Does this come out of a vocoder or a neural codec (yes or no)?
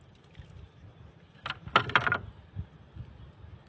no